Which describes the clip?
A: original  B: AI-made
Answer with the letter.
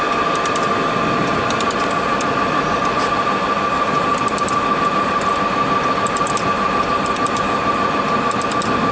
A